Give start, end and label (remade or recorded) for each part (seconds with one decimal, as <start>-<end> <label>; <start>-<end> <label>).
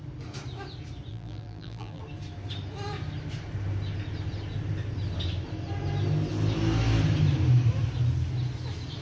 0.0-1.1 recorded; 1.1-2.0 remade; 2.0-9.0 recorded